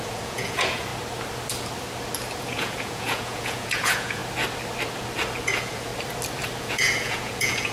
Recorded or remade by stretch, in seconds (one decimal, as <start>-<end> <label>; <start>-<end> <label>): 0.0-0.9 remade; 0.9-2.4 recorded; 2.4-4.2 remade; 4.2-5.4 recorded; 5.4-5.9 remade; 5.9-6.6 recorded; 6.6-7.7 remade